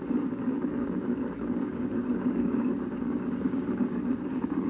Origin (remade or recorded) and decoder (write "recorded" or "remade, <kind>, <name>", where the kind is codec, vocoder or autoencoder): remade, codec, DAC